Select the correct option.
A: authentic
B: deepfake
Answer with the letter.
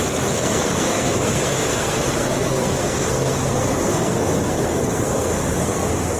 B